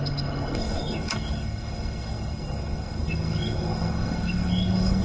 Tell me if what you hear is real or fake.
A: fake